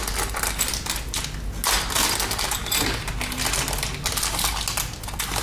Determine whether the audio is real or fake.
real